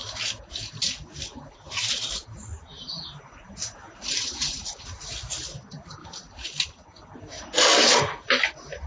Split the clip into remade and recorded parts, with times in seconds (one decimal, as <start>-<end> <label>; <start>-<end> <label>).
0.0-8.9 recorded